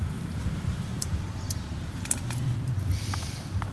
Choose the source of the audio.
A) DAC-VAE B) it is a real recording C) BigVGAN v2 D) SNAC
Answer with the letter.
C